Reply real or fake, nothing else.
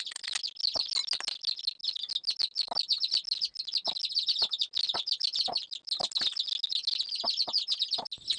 real